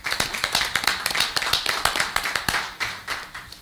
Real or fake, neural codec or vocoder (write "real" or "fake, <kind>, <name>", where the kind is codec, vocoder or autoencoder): fake, vocoder, BigVGAN v2